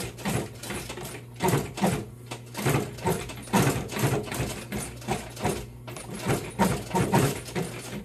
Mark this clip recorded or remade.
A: recorded